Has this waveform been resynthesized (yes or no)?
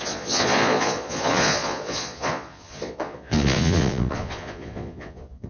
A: yes